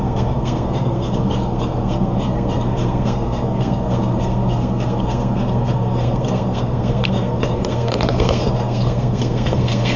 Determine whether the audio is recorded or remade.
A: remade